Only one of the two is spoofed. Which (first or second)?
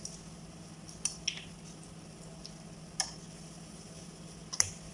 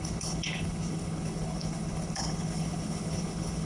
second